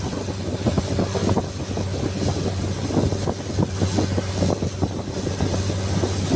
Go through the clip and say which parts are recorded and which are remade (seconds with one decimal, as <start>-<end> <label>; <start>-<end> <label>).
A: 0.0-6.4 recorded